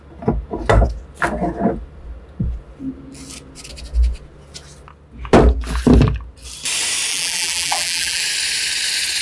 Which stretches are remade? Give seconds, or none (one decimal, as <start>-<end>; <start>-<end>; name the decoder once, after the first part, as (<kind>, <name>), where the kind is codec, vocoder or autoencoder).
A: 7.1-8.2 (vocoder, BigVGAN v2)